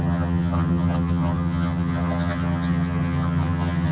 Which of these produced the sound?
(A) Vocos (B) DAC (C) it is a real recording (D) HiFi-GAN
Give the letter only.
D